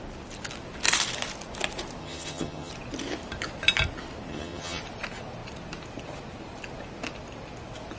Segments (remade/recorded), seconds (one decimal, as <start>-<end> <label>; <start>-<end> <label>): 0.0-2.0 recorded; 2.0-2.7 remade; 2.7-4.3 recorded; 4.3-4.8 remade; 4.8-8.0 recorded